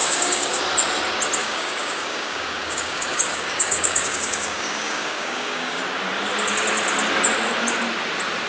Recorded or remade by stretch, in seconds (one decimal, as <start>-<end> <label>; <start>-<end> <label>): 0.0-0.6 remade; 0.6-1.4 recorded; 1.4-5.8 remade; 5.8-8.5 recorded